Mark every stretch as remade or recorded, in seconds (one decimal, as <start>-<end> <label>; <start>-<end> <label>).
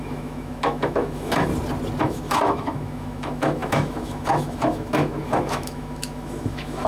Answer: 0.0-1.5 remade; 1.5-2.0 recorded; 2.0-6.9 remade